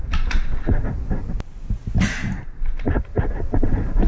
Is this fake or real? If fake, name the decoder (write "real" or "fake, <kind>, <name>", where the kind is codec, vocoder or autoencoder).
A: real